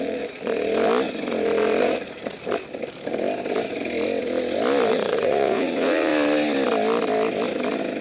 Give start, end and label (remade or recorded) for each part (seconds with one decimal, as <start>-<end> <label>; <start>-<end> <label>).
0.0-0.5 remade; 0.5-1.8 recorded; 1.8-2.2 remade; 2.2-4.9 recorded; 4.9-6.1 remade; 6.1-8.0 recorded